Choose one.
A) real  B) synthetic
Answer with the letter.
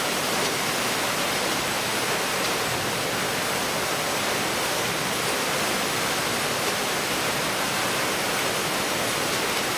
A